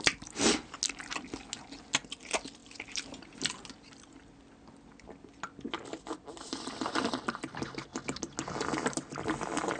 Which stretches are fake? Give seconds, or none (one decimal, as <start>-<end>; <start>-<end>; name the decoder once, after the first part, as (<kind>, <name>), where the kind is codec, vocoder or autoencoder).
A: none